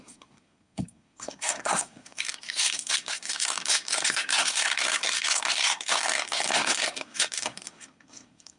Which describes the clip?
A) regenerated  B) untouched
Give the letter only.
A